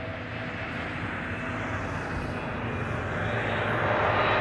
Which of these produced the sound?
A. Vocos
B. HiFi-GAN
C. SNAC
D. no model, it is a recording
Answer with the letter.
D